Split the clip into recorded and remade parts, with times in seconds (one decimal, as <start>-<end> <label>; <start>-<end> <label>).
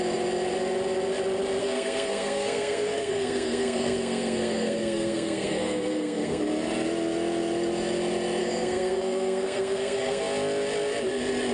0.0-1.6 recorded; 1.6-6.4 remade; 6.4-8.4 recorded; 8.4-10.2 remade; 10.2-11.5 recorded